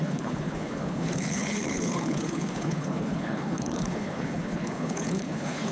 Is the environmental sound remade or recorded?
remade